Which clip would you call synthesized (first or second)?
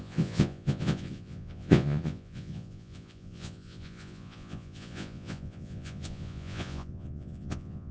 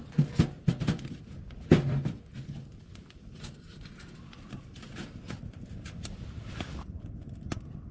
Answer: first